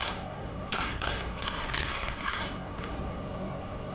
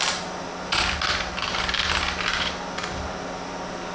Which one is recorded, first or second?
second